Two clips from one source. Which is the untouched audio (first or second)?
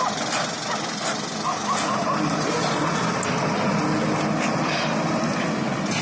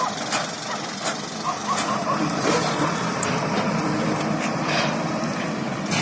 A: first